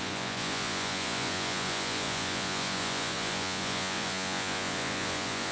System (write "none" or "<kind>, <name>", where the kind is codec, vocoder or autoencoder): vocoder, Vocos